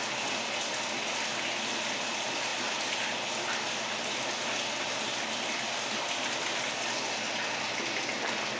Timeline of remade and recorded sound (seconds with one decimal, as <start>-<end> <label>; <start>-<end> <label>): 0.0-8.6 recorded